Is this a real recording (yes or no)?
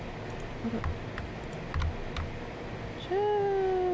yes